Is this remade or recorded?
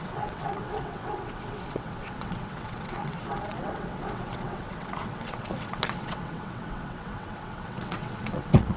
remade